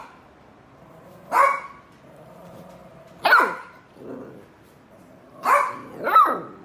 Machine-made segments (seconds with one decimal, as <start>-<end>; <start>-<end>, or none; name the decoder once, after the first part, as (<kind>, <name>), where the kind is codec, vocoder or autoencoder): none